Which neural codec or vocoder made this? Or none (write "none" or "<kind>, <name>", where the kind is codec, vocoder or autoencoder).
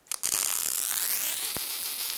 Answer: none